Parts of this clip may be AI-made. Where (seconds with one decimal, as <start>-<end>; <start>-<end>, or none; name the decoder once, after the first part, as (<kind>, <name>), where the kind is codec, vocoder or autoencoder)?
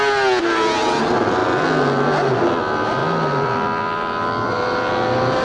3.0-4.9 (vocoder, BigVGAN v2)